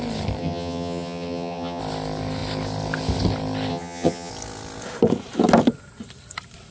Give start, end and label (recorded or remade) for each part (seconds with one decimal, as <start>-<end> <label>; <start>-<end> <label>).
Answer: 0.0-0.4 recorded; 0.4-1.8 remade; 1.8-3.7 recorded; 3.7-4.3 remade; 4.3-6.7 recorded